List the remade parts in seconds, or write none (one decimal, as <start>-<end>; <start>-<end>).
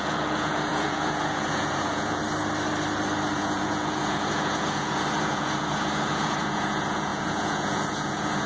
0.0-2.2; 3.4-8.5